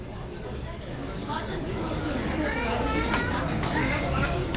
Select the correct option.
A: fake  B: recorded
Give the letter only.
A